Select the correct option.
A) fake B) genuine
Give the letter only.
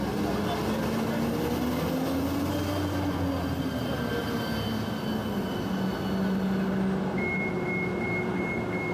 B